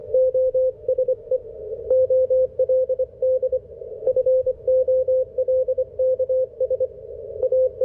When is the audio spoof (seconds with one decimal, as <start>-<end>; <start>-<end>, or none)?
0.0-1.8; 3.9-4.6